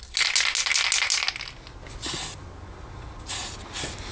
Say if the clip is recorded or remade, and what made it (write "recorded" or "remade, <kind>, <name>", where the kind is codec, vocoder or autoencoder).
recorded